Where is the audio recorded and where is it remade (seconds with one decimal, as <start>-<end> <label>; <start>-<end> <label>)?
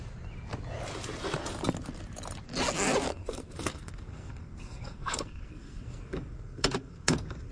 0.0-3.1 recorded; 3.1-7.5 remade